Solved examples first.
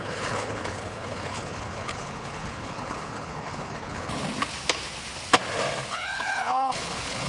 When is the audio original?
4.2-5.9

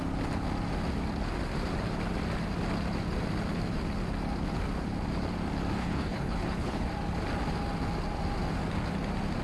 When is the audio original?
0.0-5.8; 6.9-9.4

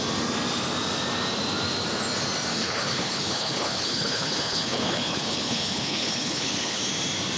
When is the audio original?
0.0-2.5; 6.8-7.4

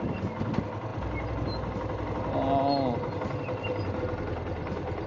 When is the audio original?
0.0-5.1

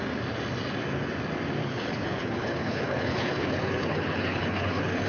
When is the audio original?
0.0-1.6

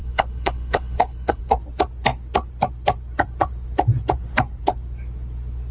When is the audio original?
1.4-5.7

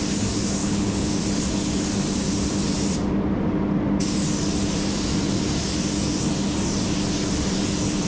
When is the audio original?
0.0-0.6; 1.1-8.1

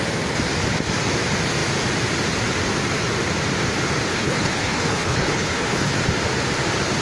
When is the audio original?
0.0-4.1; 6.0-7.0